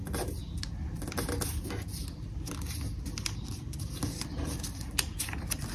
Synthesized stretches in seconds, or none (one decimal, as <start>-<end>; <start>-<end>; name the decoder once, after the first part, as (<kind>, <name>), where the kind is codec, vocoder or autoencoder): none